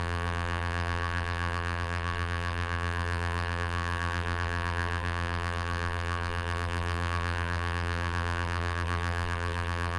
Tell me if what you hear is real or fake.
fake